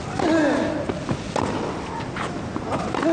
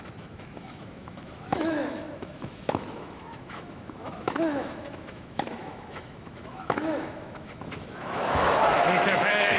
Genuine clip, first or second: first